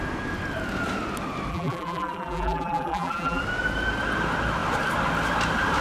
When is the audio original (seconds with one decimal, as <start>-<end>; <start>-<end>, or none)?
0.0-1.5; 3.4-5.8